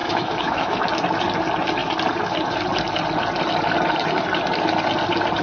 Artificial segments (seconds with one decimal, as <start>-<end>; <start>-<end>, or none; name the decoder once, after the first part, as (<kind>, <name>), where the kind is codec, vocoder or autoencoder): 0.0-0.8 (autoencoder, DAC-VAE)